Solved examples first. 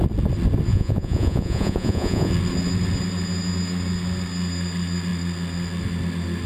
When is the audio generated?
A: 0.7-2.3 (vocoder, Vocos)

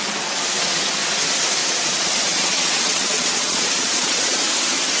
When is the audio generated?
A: 1.6-4.4 (vocoder, Vocos)

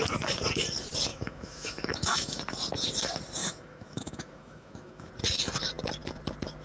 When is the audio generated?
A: 1.1-2.4 (autoencoder, DAC-VAE); 3.4-5.1

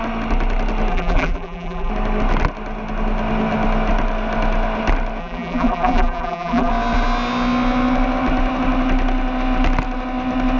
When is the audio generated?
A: 0.9-1.9 (vocoder, BigVGAN v2); 5.2-6.7